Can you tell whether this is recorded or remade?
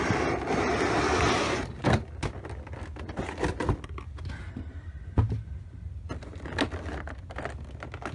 recorded